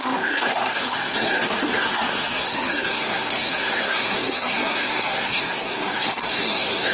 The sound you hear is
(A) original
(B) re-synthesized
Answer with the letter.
B